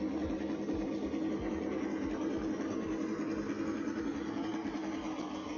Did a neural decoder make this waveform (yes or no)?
no